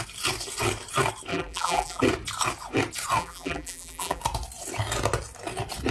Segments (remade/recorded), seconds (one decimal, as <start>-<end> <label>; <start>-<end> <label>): 0.0-1.3 recorded; 1.3-2.0 remade; 2.0-3.2 recorded; 3.2-4.2 remade; 4.2-5.9 recorded